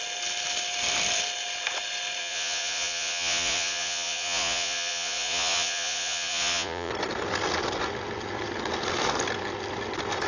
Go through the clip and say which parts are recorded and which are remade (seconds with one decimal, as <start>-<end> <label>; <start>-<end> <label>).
0.0-2.2 recorded; 2.2-6.9 remade; 6.9-10.3 recorded